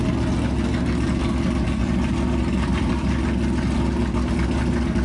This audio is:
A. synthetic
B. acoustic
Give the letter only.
B